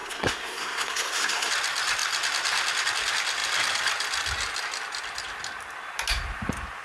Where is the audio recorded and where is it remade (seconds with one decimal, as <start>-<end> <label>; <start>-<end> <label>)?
0.0-1.5 remade; 1.5-6.8 recorded